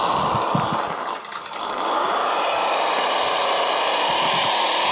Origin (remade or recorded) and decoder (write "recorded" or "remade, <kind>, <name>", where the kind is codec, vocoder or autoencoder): recorded